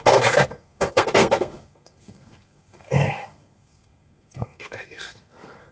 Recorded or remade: remade